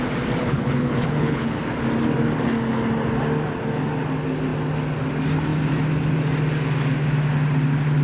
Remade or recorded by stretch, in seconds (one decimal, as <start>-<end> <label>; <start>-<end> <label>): 0.0-0.4 recorded; 0.4-1.6 remade; 1.6-8.0 recorded